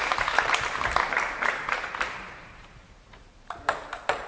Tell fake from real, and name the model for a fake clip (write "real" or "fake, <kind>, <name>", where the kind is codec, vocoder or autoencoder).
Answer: fake, vocoder, BigVGAN v2